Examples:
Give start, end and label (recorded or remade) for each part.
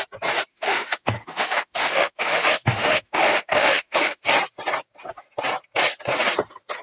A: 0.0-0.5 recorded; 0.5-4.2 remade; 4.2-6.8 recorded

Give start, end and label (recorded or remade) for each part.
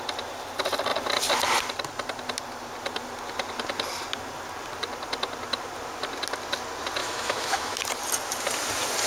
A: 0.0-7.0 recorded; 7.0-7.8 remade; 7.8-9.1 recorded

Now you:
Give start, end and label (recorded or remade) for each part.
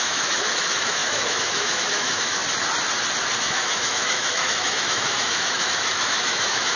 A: 0.0-2.4 remade; 2.4-3.4 recorded; 3.4-6.8 remade